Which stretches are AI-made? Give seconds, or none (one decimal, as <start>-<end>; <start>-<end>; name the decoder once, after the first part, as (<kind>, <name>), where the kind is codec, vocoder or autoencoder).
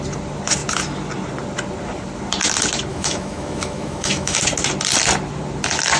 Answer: 2.9-4.4 (autoencoder, DAC-VAE)